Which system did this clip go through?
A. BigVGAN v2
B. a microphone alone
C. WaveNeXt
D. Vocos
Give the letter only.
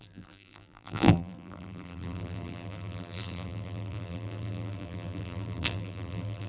A